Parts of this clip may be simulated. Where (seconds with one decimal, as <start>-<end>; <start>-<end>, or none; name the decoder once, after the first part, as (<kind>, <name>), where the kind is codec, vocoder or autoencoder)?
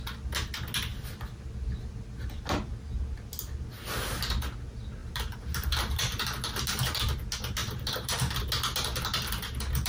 5.0-7.1 (vocoder, BigVGAN v2); 7.6-8.5